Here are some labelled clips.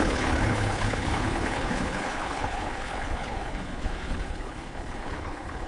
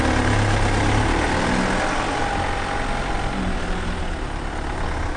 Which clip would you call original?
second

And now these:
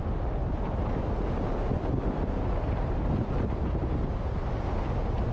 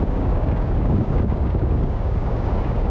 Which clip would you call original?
first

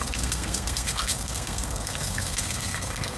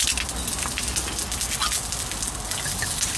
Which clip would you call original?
second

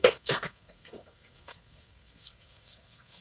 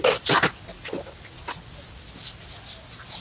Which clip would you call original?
second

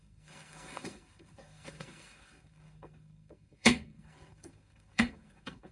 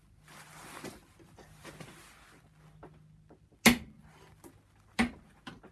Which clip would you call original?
second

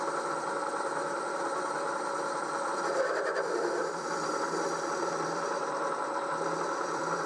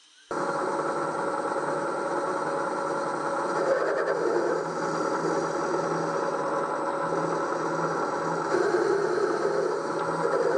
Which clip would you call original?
second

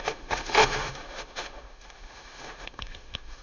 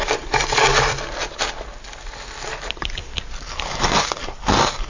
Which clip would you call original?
second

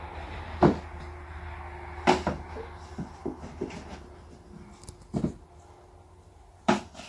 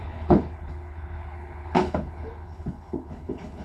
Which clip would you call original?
first